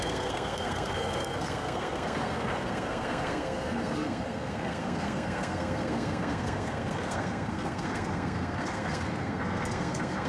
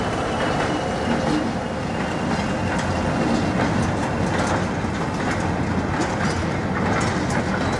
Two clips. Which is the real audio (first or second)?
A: second